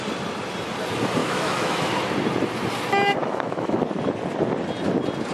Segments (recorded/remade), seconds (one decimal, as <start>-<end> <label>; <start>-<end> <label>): 0.0-1.2 recorded; 1.2-1.9 remade; 1.9-3.2 recorded; 3.2-3.9 remade; 3.9-5.3 recorded